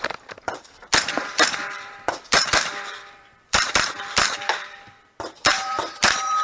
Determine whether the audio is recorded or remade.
remade